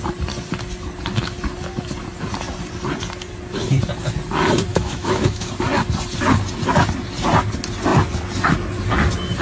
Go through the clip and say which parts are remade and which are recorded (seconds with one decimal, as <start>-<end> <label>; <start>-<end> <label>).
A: 0.0-4.7 recorded; 4.7-5.5 remade; 5.5-9.4 recorded